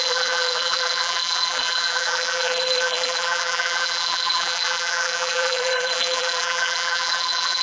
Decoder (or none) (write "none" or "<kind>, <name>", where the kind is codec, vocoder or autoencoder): vocoder, BigVGAN v2